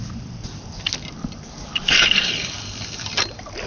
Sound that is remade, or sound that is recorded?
remade